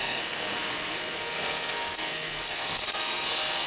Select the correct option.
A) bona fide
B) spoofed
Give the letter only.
B